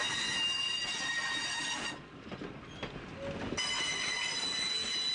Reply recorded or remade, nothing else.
recorded